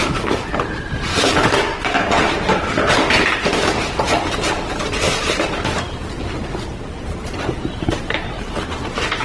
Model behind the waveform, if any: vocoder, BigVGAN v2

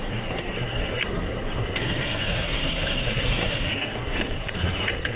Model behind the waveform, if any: codec, SNAC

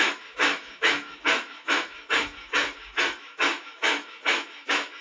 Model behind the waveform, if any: autoencoder, DAC-VAE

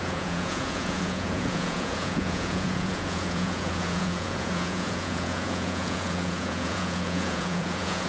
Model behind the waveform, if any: vocoder, Vocos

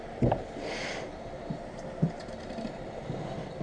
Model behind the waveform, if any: none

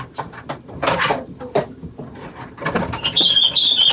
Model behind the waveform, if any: none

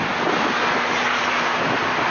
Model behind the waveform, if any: none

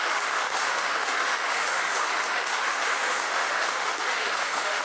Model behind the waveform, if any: autoencoder, DAC-VAE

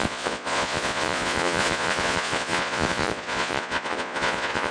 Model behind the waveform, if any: vocoder, Vocos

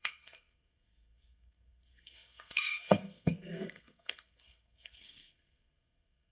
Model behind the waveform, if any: codec, SNAC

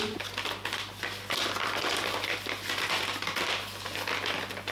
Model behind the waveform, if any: none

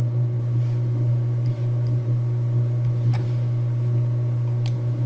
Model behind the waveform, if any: none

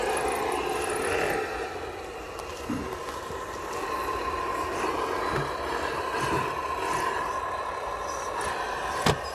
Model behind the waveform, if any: none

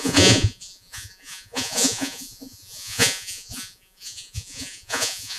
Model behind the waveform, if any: vocoder, Vocos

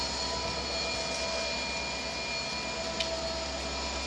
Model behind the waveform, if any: none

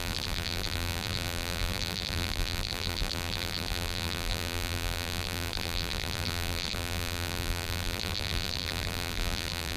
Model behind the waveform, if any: vocoder, BigVGAN v2